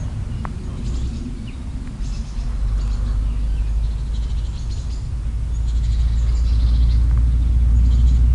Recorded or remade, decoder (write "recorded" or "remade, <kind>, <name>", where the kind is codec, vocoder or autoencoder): recorded